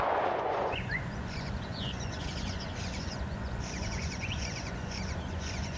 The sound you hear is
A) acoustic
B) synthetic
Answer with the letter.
B